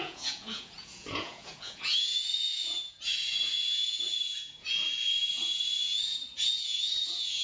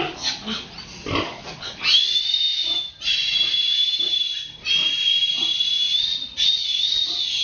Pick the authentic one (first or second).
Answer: second